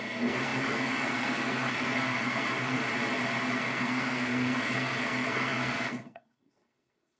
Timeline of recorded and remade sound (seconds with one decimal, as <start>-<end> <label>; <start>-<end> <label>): 0.0-2.8 remade; 2.8-3.4 recorded; 3.4-7.2 remade